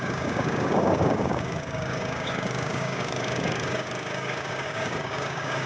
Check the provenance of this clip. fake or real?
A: fake